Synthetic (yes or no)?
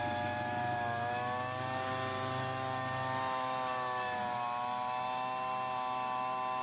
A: no